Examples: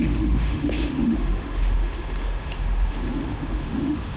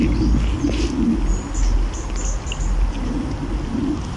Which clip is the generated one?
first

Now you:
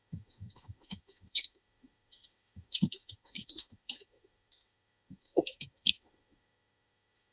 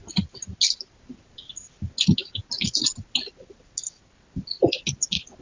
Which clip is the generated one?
first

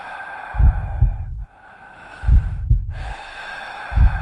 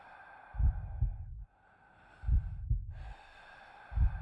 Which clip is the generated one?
first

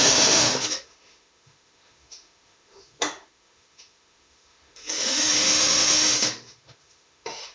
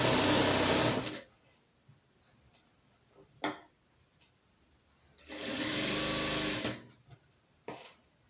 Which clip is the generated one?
first